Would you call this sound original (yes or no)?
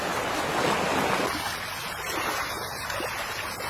yes